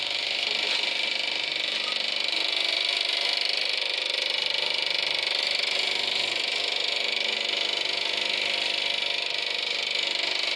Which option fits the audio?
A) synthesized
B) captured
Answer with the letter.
B